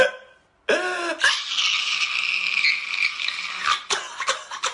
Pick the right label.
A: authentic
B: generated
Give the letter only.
A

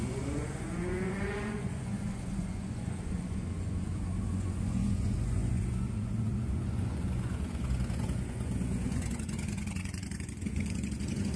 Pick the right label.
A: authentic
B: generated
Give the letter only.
B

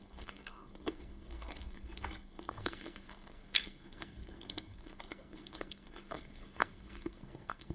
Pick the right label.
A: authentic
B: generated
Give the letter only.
B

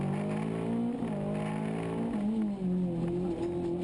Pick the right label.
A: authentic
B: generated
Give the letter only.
A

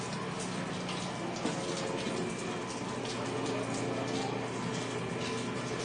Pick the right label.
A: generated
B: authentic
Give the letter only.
B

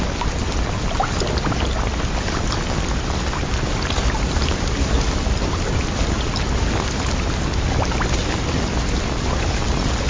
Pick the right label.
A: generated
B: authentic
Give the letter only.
B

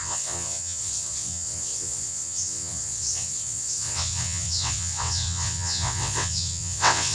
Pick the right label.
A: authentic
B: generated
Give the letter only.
B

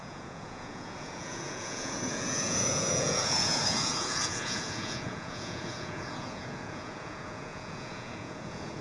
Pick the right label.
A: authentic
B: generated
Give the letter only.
B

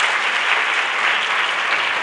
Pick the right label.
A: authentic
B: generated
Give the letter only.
A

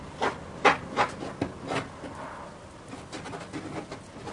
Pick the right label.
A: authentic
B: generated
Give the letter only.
A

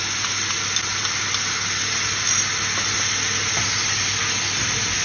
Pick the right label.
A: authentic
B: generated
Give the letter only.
A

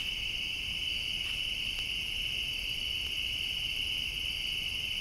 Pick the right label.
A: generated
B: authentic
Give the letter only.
B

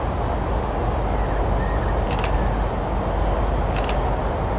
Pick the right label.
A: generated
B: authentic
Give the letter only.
B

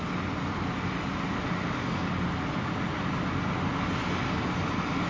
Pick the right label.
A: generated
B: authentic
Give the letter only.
B